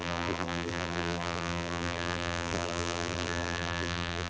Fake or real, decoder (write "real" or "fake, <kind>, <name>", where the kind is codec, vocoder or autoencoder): fake, vocoder, BigVGAN v2